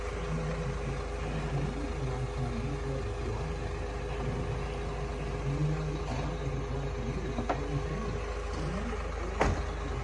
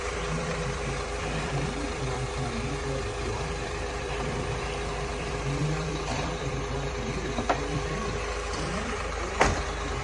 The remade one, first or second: second